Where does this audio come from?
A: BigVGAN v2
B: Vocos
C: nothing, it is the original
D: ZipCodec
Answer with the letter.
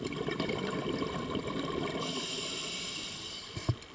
A